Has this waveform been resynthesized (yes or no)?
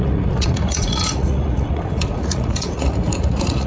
yes